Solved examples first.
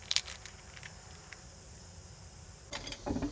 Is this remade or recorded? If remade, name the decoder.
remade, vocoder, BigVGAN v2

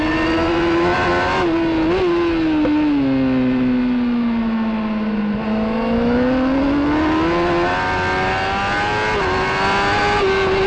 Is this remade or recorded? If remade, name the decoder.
recorded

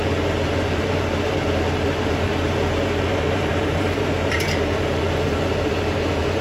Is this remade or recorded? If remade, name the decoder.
remade, vocoder, BigVGAN v2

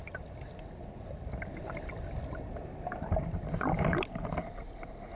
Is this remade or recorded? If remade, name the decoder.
recorded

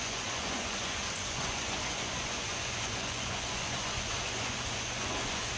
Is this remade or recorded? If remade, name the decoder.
remade, vocoder, Vocos